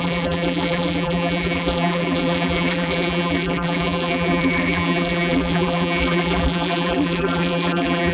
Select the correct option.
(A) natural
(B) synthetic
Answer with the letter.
B